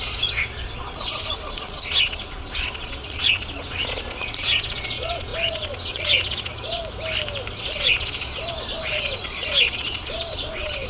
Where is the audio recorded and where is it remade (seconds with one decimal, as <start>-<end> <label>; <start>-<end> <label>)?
0.0-6.8 remade; 6.8-7.6 recorded; 7.6-10.9 remade